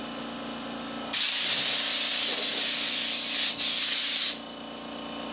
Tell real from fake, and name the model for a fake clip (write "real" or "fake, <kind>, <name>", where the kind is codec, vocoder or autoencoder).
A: real